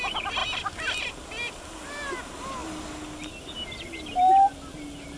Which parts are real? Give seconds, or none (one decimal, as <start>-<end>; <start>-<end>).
0.0-5.2